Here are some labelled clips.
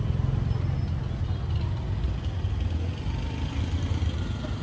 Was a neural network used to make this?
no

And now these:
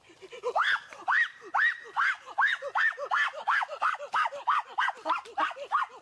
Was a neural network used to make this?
no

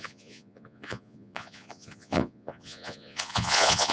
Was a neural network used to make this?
yes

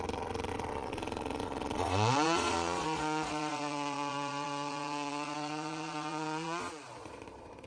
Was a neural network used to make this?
yes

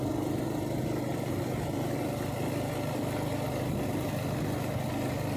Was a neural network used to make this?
no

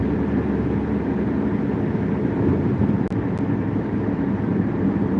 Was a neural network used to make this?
no